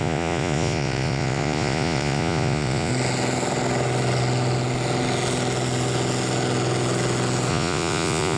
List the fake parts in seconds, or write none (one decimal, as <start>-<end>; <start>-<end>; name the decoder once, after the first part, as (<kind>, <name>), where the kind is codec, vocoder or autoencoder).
0.0-2.9 (vocoder, Vocos); 7.5-8.4